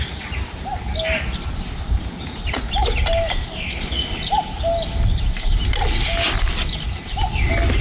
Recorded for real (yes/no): yes